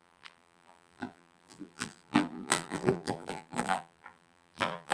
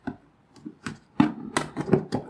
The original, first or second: second